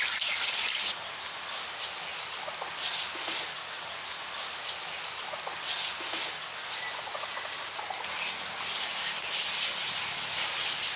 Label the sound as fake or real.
real